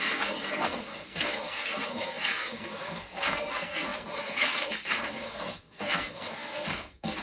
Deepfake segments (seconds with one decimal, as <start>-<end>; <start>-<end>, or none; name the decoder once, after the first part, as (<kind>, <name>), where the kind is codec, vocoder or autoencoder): 0.0-7.2 (codec, SNAC)